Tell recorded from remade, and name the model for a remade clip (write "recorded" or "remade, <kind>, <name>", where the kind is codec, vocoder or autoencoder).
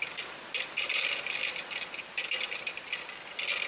recorded